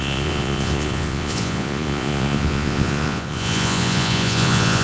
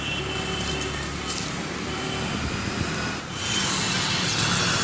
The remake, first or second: first